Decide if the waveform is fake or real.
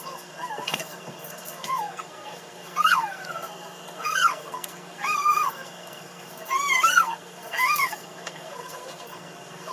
fake